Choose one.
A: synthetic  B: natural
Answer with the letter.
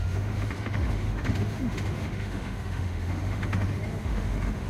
A